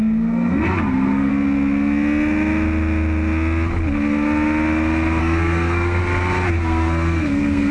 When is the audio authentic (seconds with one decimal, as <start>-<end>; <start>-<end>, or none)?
1.3-5.2; 6.0-6.6